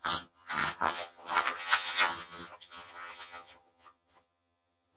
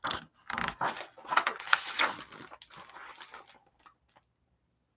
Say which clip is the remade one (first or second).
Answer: first